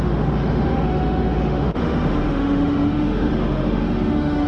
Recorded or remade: remade